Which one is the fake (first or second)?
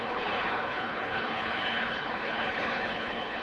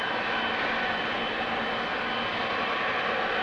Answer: first